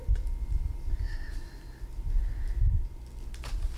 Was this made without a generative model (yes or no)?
yes